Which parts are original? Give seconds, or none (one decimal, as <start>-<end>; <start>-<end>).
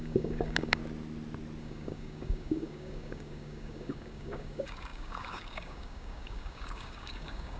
0.8-1.6